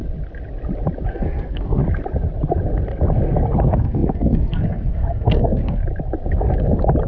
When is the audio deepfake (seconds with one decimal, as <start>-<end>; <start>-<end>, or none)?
1.1-1.8; 3.6-5.8